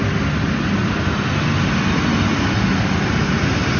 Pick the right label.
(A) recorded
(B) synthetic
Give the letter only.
A